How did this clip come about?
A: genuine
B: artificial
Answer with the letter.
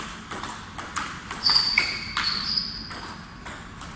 A